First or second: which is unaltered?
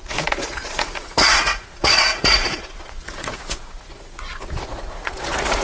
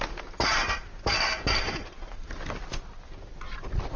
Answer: second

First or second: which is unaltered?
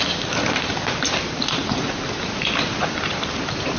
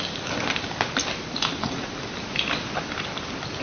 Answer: second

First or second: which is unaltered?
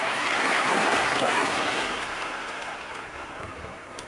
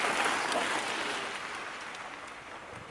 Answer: second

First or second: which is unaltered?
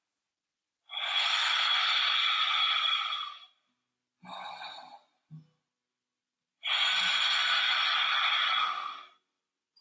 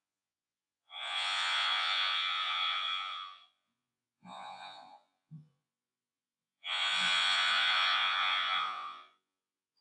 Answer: first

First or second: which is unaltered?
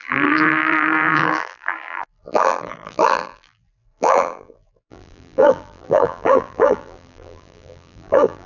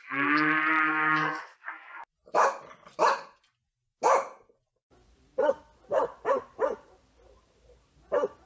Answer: second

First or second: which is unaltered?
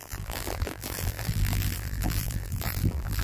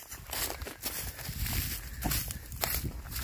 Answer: second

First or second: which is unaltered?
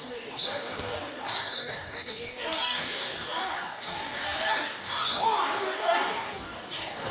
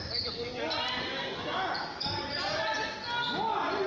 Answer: second